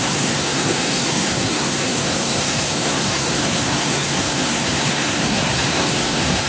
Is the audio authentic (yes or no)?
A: no